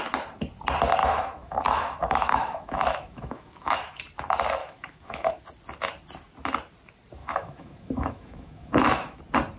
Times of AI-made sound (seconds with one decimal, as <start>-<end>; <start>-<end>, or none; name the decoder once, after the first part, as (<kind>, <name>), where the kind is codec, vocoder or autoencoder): 1.0-4.0 (autoencoder, DAC-VAE); 4.6-5.4; 7.2-9.2

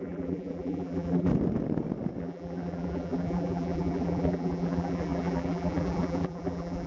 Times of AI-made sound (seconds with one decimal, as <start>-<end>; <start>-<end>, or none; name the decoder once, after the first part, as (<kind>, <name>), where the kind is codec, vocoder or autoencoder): 0.0-1.3 (vocoder, BigVGAN v2); 2.2-6.9

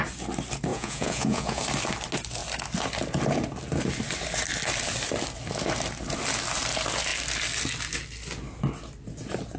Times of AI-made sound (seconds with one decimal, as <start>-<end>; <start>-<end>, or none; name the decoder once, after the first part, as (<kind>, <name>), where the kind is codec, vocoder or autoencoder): 0.7-1.6 (vocoder, Vocos)

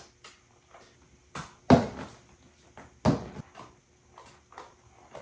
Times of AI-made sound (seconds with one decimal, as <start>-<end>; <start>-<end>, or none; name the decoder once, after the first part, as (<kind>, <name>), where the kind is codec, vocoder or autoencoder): none

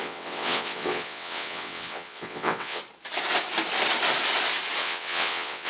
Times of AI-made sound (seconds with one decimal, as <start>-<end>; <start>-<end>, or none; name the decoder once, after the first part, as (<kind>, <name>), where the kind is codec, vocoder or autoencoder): 0.0-2.8 (vocoder, WaveNeXt); 4.8-5.7

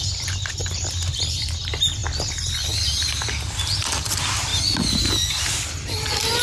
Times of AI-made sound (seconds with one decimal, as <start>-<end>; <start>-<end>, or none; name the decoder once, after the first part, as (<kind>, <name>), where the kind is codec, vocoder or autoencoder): none